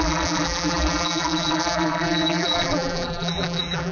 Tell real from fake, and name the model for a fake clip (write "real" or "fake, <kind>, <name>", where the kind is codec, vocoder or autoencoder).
fake, vocoder, BigVGAN v2